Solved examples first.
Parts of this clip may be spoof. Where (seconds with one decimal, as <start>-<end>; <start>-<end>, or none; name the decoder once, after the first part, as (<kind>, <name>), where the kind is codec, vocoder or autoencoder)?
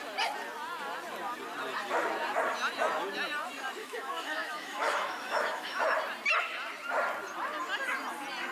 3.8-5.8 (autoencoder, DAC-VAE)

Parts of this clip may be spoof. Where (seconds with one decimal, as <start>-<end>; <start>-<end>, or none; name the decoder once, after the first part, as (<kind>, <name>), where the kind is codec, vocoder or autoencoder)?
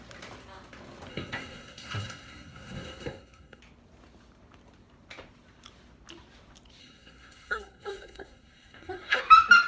1.1-3.6 (codec, SNAC); 6.8-9.2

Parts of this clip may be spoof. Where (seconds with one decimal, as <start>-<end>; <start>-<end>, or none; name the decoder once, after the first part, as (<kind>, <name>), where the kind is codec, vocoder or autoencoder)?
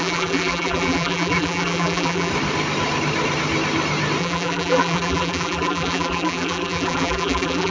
0.0-2.3 (vocoder, BigVGAN v2); 4.2-7.7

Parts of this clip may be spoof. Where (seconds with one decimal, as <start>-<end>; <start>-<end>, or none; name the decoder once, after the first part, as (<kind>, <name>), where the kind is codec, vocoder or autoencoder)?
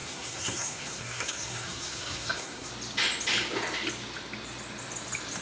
0.0-2.7 (codec, SNAC)